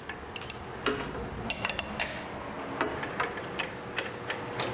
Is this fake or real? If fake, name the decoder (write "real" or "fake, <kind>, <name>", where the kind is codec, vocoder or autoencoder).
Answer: real